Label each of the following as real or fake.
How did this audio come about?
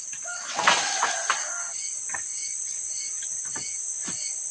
fake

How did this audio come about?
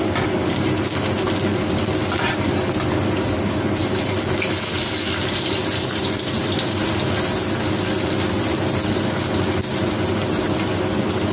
real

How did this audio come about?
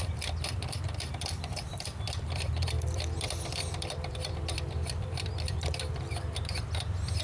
fake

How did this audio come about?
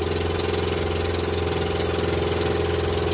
real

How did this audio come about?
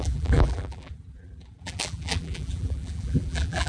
fake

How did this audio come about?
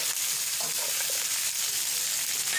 real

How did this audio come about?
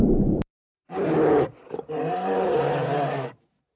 fake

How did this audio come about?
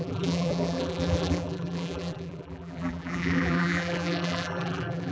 fake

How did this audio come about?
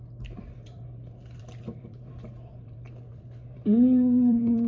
fake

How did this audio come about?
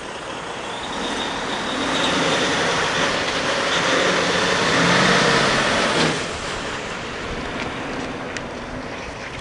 fake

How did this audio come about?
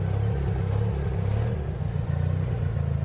real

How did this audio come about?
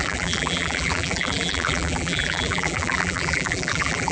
fake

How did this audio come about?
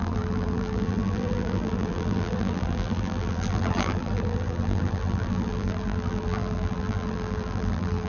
fake